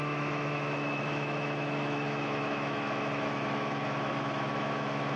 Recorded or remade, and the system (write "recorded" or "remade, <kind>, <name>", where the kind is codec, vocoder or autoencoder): remade, autoencoder, DAC-VAE